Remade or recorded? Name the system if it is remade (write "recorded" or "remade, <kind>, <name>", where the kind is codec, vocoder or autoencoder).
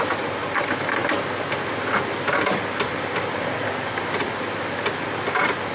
recorded